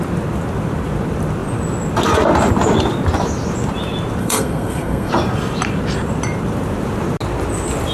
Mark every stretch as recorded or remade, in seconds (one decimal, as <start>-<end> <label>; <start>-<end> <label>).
0.0-4.2 recorded; 4.2-5.1 remade; 5.1-7.9 recorded